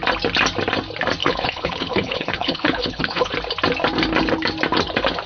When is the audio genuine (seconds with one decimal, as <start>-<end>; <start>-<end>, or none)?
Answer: 0.0-1.2; 3.3-5.3